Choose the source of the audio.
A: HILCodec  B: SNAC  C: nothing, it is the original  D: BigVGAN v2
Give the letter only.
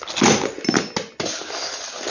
C